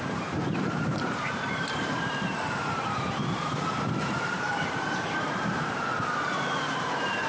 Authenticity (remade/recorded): remade